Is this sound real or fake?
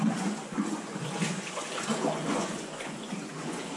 fake